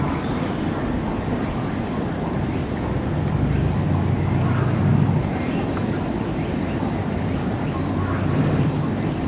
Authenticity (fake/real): real